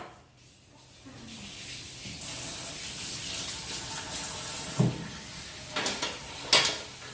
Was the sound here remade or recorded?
recorded